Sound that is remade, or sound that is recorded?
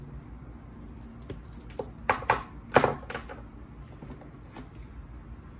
recorded